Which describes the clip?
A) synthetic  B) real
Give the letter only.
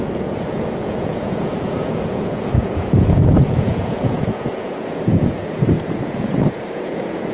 A